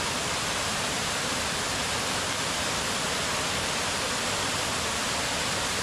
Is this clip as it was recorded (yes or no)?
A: yes